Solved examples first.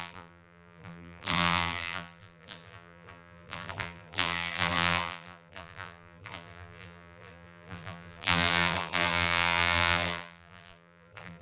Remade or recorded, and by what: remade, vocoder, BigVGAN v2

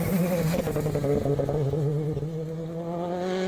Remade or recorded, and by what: recorded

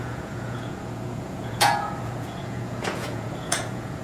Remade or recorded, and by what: remade, vocoder, Vocos